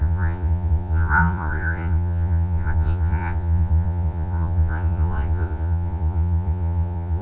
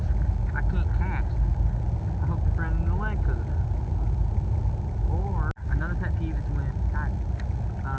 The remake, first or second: first